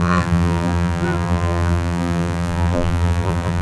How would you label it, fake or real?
fake